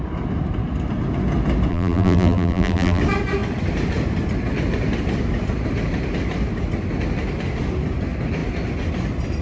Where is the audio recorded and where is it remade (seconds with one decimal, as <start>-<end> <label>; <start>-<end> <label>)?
0.0-1.7 recorded; 1.7-3.0 remade; 3.0-9.4 recorded